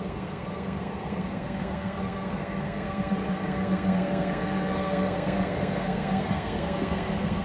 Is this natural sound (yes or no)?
no